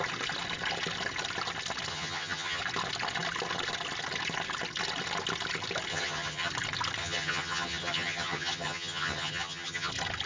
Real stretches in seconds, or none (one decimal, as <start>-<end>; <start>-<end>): 0.0-1.9; 2.6-5.9; 6.5-7.0; 9.9-10.3